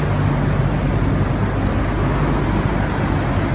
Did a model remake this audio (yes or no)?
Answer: no